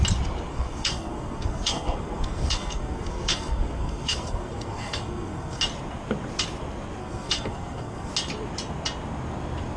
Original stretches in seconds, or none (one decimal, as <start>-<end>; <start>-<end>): 0.0-0.5; 5.6-7.0; 8.1-9.8